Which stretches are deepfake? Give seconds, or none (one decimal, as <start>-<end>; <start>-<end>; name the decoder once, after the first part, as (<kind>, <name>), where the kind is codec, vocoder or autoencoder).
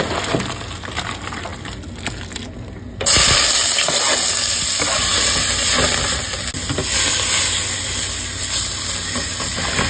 none